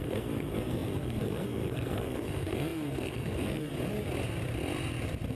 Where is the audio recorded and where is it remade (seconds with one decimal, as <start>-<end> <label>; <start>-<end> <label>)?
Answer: 0.0-3.7 remade; 3.7-5.3 recorded